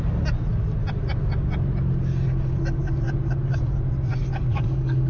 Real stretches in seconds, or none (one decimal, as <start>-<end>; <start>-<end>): 0.0-4.5